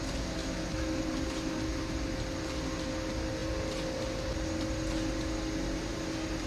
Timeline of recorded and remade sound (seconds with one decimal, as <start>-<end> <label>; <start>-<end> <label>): 0.0-0.4 recorded; 0.4-1.0 remade; 1.0-6.5 recorded